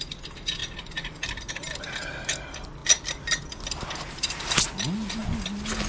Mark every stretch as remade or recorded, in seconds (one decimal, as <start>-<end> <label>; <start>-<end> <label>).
0.0-5.9 recorded